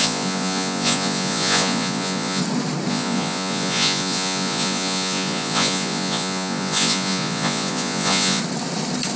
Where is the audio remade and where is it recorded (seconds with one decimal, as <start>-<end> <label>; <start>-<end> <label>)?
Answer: 0.0-2.4 remade; 2.4-2.9 recorded; 2.9-8.4 remade; 8.4-9.2 recorded